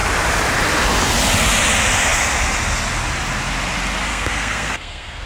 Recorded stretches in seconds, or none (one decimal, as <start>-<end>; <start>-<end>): 0.0-4.1